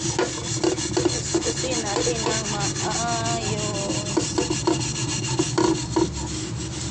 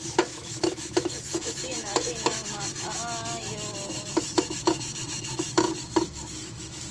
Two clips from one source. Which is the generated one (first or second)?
second